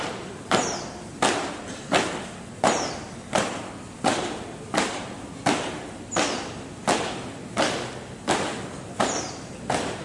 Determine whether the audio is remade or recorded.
recorded